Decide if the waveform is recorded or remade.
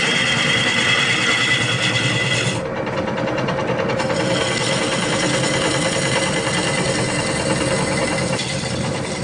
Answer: recorded